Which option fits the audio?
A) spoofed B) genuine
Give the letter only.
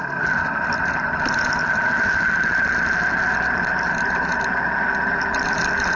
B